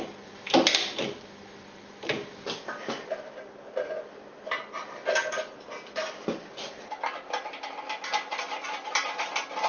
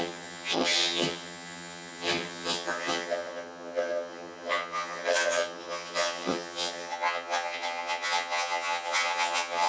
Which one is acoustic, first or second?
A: first